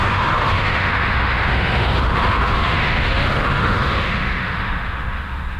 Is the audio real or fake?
fake